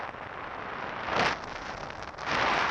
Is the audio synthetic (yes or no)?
no